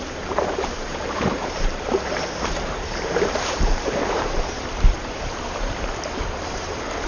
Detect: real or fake fake